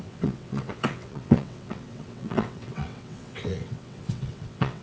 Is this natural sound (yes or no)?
no